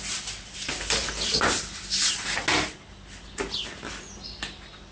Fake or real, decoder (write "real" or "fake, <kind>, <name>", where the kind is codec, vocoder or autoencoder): real